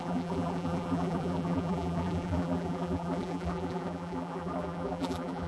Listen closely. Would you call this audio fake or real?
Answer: fake